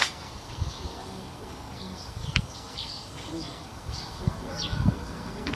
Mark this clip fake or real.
fake